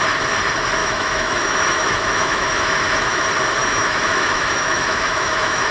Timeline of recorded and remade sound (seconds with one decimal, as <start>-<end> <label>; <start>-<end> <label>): 0.0-0.8 recorded; 0.8-3.2 remade; 3.2-3.6 recorded; 3.6-5.7 remade

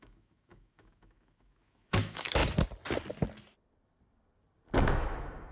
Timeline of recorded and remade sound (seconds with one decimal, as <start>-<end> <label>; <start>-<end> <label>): 0.0-2.4 remade; 2.4-4.8 recorded; 4.8-5.5 remade